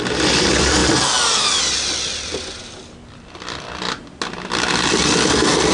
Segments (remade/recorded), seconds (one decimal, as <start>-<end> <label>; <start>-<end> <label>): 0.0-5.7 recorded